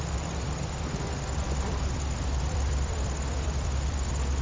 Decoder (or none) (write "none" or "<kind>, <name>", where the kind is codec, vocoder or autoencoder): vocoder, BigVGAN v2